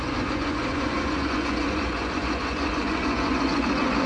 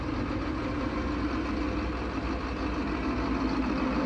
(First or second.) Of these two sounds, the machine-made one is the first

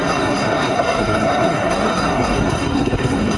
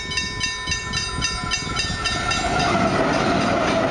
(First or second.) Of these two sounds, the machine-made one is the first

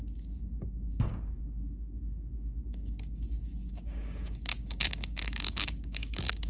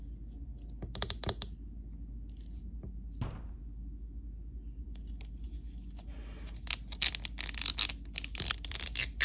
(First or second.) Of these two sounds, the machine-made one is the first